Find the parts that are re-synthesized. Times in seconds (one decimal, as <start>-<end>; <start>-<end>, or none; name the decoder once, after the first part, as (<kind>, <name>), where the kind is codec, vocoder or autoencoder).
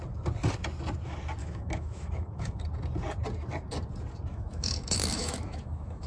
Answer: 1.4-2.6 (autoencoder, DAC-VAE); 4.3-6.1